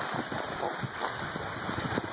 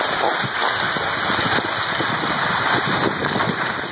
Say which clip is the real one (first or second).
second